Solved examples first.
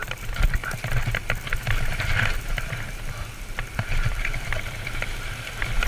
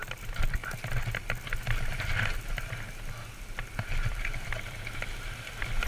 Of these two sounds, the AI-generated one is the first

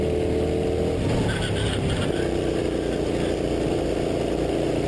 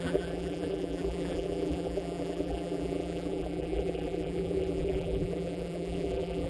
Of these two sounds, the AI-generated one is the second